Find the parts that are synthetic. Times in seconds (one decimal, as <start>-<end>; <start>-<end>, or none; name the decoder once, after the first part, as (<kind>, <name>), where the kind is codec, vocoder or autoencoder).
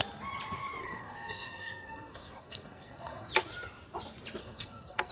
0.8-3.3 (codec, SNAC); 4.4-5.1